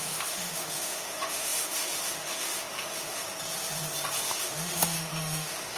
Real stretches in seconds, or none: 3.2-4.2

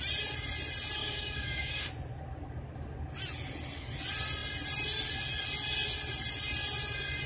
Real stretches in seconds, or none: 0.0-1.0; 1.9-7.3

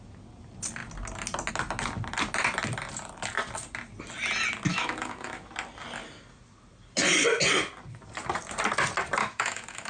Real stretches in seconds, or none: 0.0-4.7; 5.5-9.2

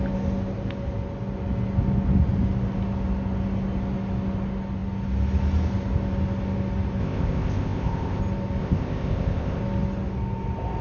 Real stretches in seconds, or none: 0.0-7.0; 8.2-8.6; 9.6-10.8